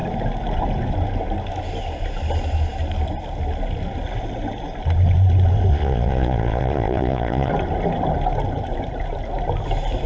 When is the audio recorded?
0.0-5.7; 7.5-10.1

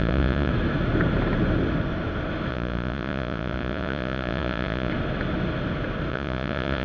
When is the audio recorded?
0.5-2.5; 4.9-6.1

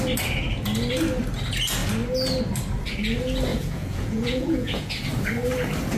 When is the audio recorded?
0.0-3.5; 4.9-6.0